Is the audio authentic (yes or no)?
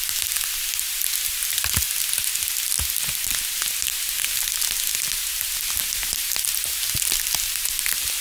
yes